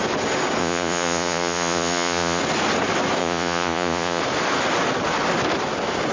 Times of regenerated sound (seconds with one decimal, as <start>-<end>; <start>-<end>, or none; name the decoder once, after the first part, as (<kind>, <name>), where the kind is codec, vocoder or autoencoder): 0.6-2.4 (vocoder, Vocos); 3.2-4.2